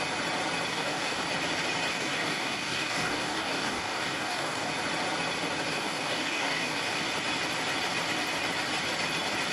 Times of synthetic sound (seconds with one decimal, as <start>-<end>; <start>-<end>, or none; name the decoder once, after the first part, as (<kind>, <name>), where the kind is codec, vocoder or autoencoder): 0.7-1.2 (codec, DAC); 1.9-4.7; 5.7-7.0

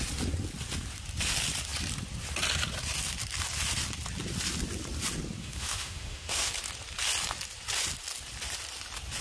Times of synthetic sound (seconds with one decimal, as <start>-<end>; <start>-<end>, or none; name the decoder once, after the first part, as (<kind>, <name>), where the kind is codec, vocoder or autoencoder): 5.4-6.5 (autoencoder, DAC-VAE)

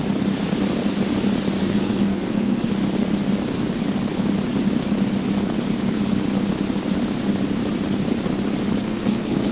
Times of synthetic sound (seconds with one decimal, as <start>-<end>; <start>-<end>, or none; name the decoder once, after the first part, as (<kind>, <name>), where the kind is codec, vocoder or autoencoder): 1.6-2.7 (codec, SNAC); 8.8-9.5

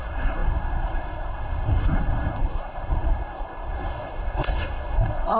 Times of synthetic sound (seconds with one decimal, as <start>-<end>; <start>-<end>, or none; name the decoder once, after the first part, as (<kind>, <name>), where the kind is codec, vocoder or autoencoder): 0.0-5.4 (codec, SNAC)